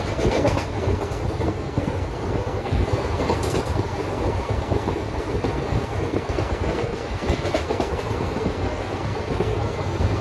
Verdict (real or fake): fake